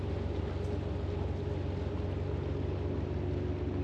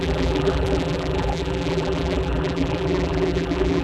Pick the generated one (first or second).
second